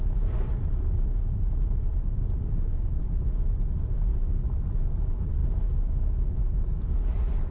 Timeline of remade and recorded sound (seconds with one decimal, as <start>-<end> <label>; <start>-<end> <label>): 0.0-1.2 recorded; 1.2-2.2 remade; 2.2-4.1 recorded; 4.1-4.7 remade; 4.7-7.5 recorded